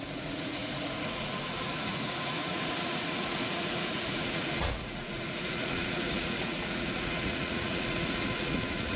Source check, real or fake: fake